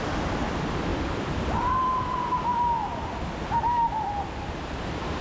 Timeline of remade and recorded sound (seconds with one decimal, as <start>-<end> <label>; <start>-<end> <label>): 0.0-0.9 recorded; 0.9-3.1 remade; 3.1-5.2 recorded